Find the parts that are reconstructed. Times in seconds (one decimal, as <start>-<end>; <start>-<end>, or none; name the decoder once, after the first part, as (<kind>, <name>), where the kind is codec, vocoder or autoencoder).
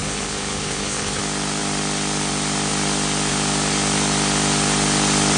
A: 0.0-1.2 (codec, HILCodec)